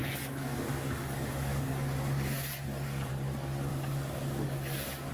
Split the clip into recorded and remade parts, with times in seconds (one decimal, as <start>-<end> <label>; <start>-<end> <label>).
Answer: 0.0-3.1 remade; 3.1-3.7 recorded; 3.7-5.1 remade